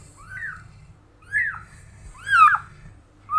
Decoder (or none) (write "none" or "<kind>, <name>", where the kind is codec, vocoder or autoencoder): none